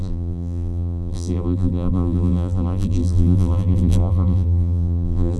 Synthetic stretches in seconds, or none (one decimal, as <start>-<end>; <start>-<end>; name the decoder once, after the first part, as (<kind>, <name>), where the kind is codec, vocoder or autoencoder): 0.0-5.4 (vocoder, BigVGAN v2)